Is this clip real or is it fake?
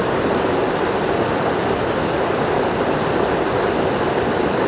real